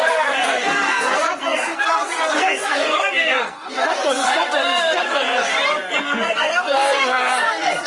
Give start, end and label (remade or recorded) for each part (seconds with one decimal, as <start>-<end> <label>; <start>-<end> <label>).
0.0-5.5 remade; 5.5-6.0 recorded; 6.0-7.9 remade